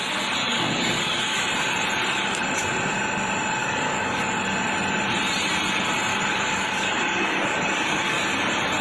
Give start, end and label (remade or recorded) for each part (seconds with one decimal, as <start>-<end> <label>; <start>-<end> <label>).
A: 0.0-0.4 recorded; 0.4-1.4 remade; 1.4-3.6 recorded; 3.6-4.2 remade; 4.2-6.1 recorded; 6.1-8.2 remade; 8.2-8.8 recorded